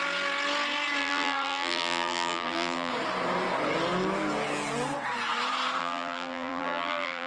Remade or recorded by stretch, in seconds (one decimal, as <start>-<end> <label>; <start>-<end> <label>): 0.0-1.0 recorded; 1.0-2.9 remade; 2.9-5.8 recorded; 5.8-7.3 remade